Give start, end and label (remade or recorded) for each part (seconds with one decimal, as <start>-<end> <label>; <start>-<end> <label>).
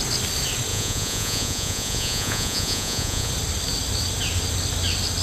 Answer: 0.0-0.7 recorded; 0.7-3.3 remade; 3.3-5.2 recorded